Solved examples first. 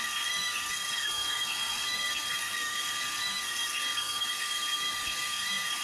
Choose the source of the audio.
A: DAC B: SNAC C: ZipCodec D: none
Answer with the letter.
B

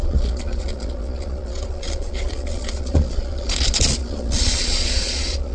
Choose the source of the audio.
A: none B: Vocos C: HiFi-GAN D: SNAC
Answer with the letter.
B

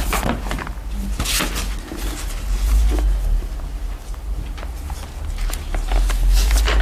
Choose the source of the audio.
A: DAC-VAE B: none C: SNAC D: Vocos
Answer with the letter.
B